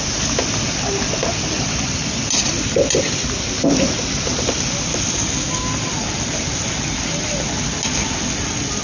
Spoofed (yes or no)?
no